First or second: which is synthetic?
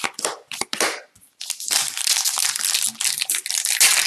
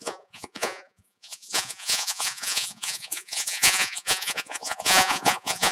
second